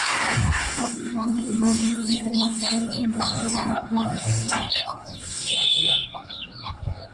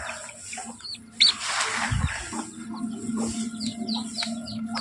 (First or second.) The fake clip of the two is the first